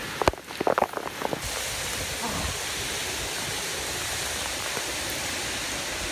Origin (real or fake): real